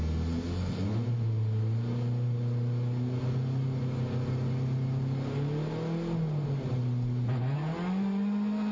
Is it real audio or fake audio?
real